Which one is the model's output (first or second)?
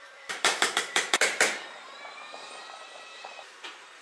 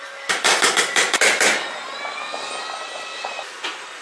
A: first